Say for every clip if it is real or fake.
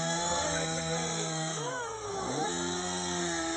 fake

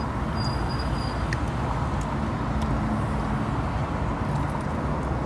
real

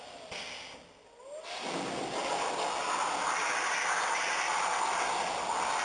real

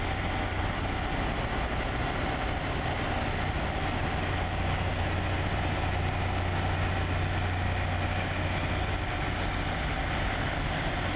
real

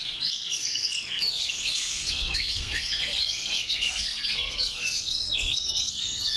fake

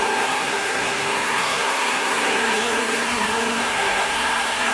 fake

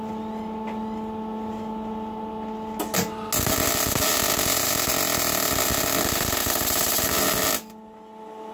real